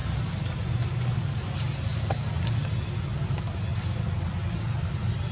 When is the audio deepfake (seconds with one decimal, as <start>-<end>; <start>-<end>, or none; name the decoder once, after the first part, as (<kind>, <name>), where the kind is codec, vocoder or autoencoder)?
none